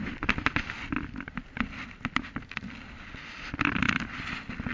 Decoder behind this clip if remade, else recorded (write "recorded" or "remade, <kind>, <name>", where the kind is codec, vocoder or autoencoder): recorded